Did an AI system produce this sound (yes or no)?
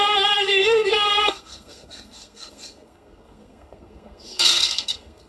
yes